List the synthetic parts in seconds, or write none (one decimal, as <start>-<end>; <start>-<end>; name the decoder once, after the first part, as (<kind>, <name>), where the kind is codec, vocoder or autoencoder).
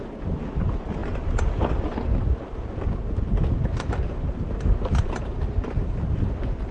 2.1-6.1 (vocoder, BigVGAN v2)